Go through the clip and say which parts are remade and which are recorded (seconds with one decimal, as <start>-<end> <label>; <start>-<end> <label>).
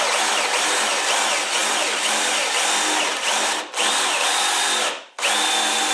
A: 0.0-5.9 recorded